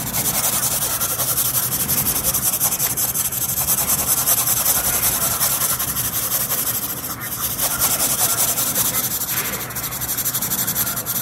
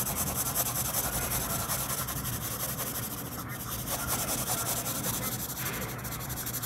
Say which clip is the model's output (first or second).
first